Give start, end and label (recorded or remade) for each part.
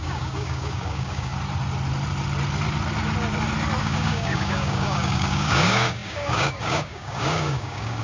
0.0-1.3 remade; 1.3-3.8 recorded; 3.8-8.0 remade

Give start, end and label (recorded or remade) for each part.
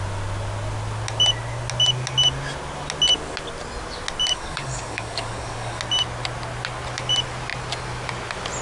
0.0-4.3 recorded; 4.3-5.8 remade; 5.8-8.6 recorded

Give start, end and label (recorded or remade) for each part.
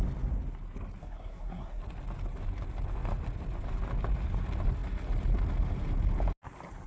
0.0-1.0 recorded; 1.0-1.8 remade; 1.8-6.9 recorded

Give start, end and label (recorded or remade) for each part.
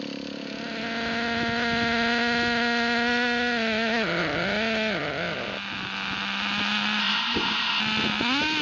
0.0-7.0 recorded; 7.0-7.8 remade; 7.8-8.6 recorded